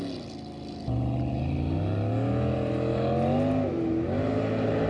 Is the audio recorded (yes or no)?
yes